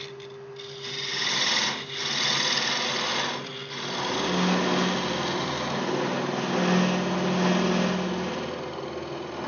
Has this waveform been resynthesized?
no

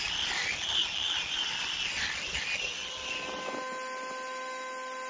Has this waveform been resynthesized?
no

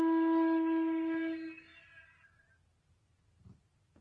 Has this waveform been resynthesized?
no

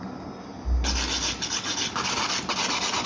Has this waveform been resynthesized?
no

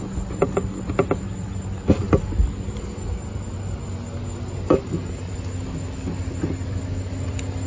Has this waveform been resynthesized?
no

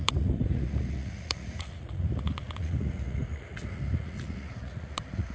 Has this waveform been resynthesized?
yes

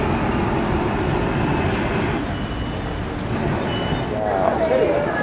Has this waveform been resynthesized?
no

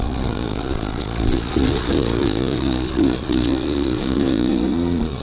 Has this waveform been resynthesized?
yes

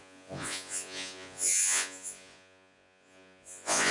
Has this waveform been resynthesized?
yes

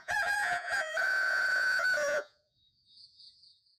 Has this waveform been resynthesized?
yes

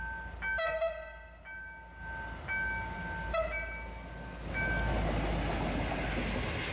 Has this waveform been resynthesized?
no